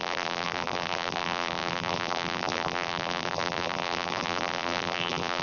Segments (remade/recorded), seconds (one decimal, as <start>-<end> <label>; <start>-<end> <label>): 0.0-5.4 remade